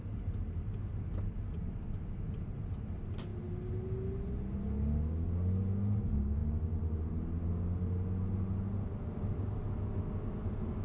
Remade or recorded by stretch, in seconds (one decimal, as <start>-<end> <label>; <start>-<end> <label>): 0.0-10.8 recorded